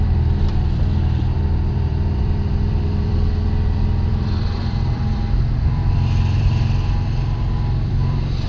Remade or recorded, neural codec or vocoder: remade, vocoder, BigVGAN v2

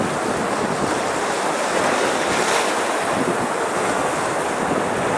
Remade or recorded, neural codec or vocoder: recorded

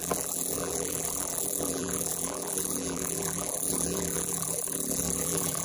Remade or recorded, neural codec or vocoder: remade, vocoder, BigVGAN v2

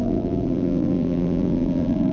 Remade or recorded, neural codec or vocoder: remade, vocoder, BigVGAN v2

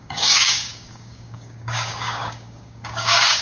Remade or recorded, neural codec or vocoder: remade, codec, DAC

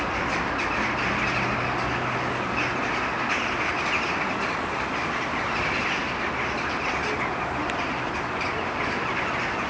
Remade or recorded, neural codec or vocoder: recorded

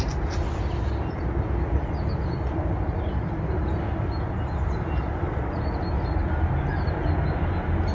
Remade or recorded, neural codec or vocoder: recorded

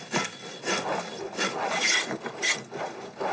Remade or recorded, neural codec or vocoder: recorded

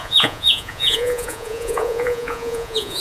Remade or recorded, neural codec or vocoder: remade, vocoder, Vocos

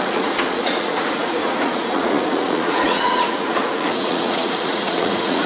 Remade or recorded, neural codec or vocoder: remade, vocoder, Vocos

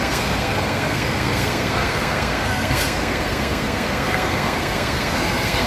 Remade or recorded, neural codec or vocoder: remade, codec, SNAC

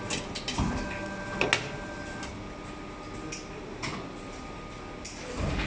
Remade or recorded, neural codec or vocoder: recorded